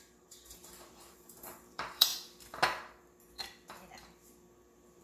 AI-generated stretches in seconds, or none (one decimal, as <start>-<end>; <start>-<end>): 0.0-2.1